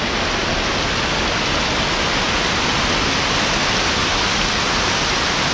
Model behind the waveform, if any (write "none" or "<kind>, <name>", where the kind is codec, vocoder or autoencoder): none